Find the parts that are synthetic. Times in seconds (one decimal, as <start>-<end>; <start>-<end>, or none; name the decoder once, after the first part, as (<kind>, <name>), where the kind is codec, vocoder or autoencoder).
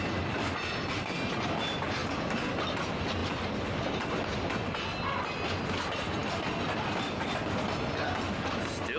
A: none